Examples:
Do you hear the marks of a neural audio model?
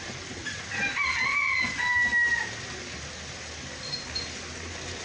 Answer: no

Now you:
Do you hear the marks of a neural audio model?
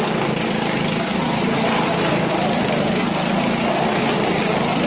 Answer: no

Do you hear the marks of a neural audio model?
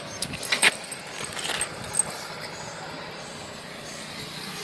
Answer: no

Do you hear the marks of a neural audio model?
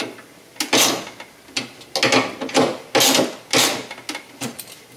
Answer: no